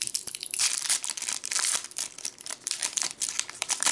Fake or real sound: fake